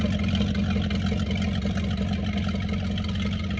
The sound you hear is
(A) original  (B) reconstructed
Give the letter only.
A